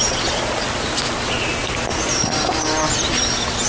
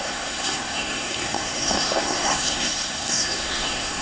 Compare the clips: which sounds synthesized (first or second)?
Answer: second